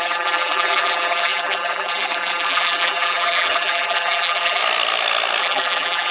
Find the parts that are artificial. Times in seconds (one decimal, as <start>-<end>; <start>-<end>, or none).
0.0-4.6; 5.4-6.1